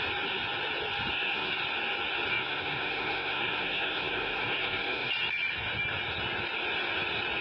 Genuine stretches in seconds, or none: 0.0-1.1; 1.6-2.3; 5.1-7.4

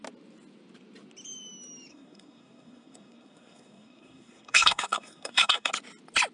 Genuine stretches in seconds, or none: 0.0-1.9; 5.7-6.3

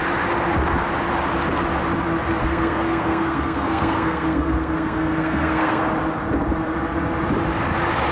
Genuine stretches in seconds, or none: 0.0-2.4; 5.8-8.1

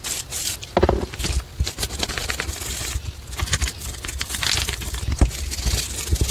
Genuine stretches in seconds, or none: 0.0-6.3

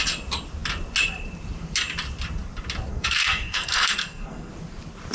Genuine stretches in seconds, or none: 0.0-2.9; 4.5-5.1

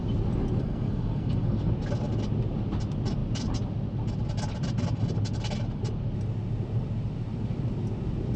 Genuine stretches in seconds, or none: 0.0-0.6; 1.7-8.4